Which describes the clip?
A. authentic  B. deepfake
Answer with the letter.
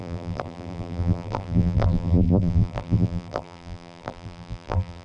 B